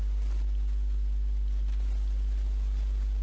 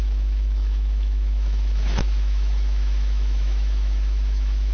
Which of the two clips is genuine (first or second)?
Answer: first